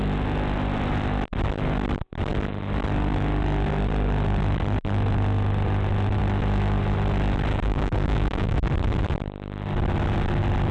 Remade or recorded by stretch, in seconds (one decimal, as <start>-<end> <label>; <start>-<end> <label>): 0.0-7.5 recorded; 7.5-8.7 remade; 8.7-10.7 recorded